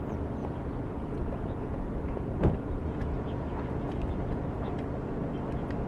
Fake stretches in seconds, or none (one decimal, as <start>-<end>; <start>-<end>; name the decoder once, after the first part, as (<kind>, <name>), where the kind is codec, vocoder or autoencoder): 0.4-3.9 (vocoder, Vocos)